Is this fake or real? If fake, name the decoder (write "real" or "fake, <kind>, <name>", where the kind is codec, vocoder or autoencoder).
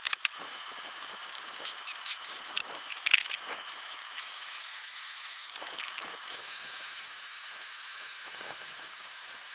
fake, autoencoder, DAC-VAE